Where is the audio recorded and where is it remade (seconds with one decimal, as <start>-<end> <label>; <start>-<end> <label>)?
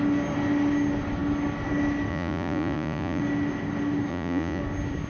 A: 0.0-2.1 recorded; 2.1-3.2 remade; 3.2-4.1 recorded; 4.1-4.6 remade; 4.6-5.1 recorded